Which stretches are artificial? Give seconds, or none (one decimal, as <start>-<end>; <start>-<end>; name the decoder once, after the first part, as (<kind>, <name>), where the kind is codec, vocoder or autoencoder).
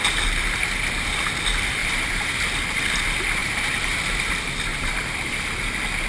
1.8-2.5 (vocoder, BigVGAN v2); 3.4-4.1; 4.7-5.3